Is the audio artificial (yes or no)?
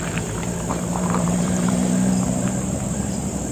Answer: yes